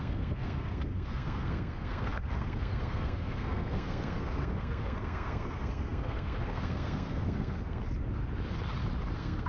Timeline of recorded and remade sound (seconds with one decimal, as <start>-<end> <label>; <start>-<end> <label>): 0.0-7.8 remade; 7.8-9.1 recorded; 9.1-9.5 remade